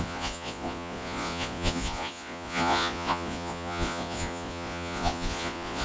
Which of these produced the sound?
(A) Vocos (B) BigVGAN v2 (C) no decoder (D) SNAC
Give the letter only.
A